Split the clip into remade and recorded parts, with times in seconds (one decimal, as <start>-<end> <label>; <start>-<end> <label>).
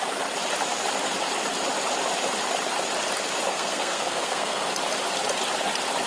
0.0-3.5 recorded; 3.5-4.7 remade; 4.7-6.1 recorded